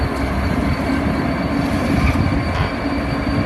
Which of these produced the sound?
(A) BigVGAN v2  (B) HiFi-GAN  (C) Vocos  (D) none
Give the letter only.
D